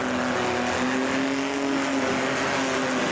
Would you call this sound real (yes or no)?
yes